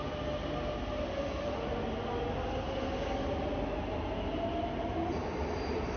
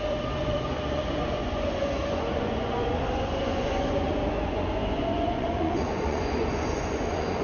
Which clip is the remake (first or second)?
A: second